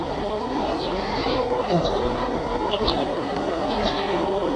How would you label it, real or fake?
fake